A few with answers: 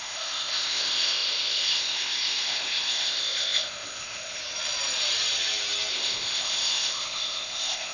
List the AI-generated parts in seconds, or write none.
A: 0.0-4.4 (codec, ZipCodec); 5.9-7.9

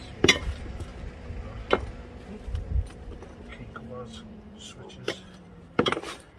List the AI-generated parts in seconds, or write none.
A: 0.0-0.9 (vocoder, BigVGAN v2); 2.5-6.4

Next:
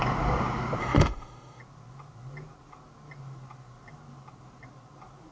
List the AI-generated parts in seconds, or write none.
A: 0.8-1.6 (autoencoder, DAC-VAE)

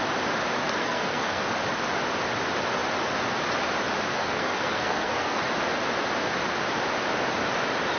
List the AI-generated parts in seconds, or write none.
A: 0.8-1.4 (codec, SNAC); 4.1-5.4

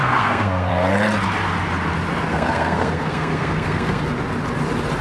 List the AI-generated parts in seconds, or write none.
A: 0.0-0.7 (codec, SNAC); 2.3-4.0

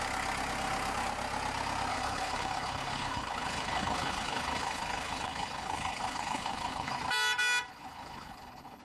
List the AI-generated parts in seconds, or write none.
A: 1.9-7.0 (codec, HILCodec); 7.7-8.8

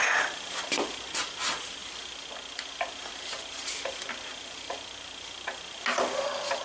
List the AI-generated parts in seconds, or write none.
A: none

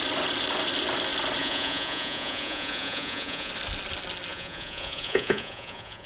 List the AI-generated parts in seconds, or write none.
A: 1.4-3.5 (vocoder, Vocos); 4.3-6.1